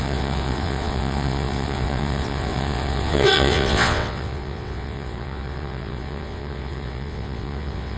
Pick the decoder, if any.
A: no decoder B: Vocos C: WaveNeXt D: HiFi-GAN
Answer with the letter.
C